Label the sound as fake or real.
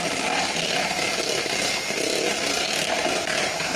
fake